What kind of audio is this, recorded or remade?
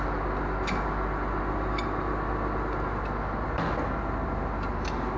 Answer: recorded